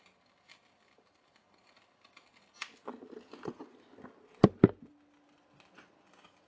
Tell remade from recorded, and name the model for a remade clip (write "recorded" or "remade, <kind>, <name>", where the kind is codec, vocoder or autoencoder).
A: recorded